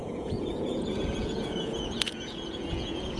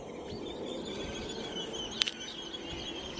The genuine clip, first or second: second